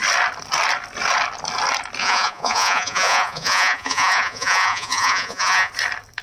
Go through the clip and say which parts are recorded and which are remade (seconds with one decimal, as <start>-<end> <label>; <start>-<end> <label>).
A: 0.0-2.0 recorded; 2.0-5.7 remade; 5.7-6.2 recorded